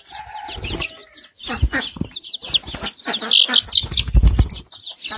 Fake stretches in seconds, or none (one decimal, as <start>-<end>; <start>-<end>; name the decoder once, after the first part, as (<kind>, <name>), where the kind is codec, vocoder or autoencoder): none